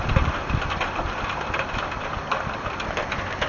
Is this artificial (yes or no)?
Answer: no